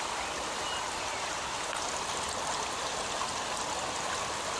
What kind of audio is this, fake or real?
real